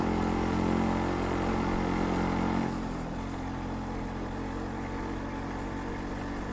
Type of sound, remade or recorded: recorded